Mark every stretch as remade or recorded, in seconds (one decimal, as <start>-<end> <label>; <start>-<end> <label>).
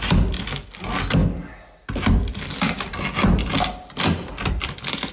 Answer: 0.0-5.1 recorded